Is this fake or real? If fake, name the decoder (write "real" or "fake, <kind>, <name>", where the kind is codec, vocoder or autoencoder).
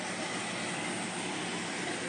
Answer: real